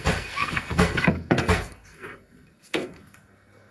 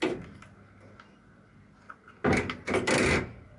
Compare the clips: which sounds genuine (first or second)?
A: second